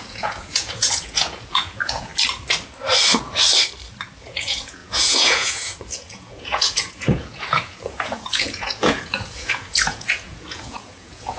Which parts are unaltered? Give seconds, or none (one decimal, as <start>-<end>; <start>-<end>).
2.1-4.2

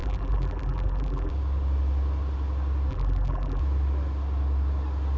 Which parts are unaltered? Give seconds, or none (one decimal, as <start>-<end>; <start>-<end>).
1.3-2.9; 3.6-5.2

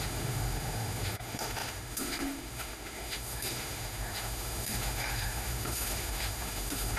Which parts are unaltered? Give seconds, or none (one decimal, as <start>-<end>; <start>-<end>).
none

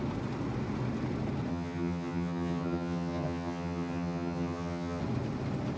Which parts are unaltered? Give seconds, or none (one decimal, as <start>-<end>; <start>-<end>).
0.0-1.5; 5.0-5.8